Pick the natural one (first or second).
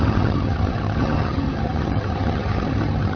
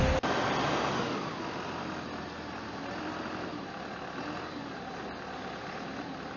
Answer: second